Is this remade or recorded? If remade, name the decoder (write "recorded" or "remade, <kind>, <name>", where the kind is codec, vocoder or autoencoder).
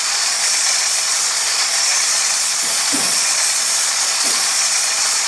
remade, vocoder, Vocos